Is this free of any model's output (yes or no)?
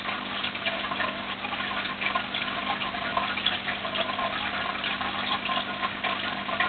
yes